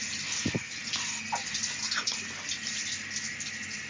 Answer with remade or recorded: recorded